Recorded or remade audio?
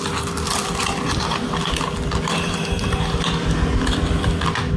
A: recorded